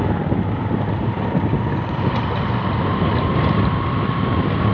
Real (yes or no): yes